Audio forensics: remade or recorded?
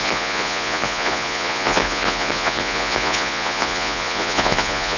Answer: remade